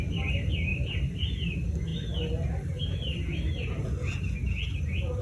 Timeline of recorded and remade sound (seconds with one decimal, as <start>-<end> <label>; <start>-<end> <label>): 0.0-0.7 recorded; 0.7-1.3 remade; 1.3-5.2 recorded